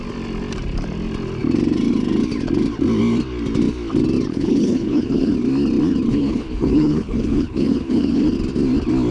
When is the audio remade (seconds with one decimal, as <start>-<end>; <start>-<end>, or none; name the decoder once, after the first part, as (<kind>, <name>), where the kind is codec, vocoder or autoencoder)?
4.3-5.3 (codec, HILCodec); 6.1-8.3